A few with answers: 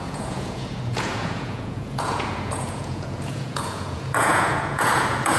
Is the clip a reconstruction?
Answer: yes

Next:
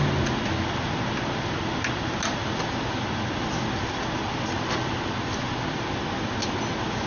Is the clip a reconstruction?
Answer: no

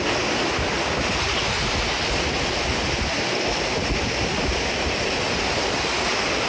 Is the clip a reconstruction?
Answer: no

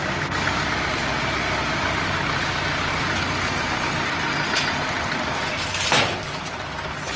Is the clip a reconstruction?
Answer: no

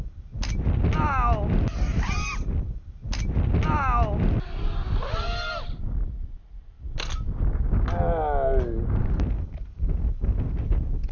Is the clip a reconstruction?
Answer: no